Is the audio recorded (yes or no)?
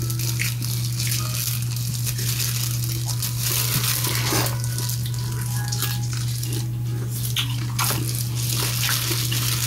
yes